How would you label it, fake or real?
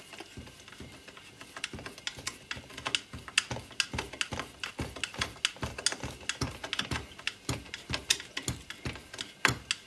real